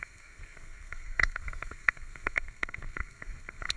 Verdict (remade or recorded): remade